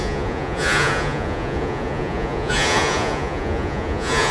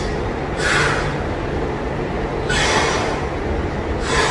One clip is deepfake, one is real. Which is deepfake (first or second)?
first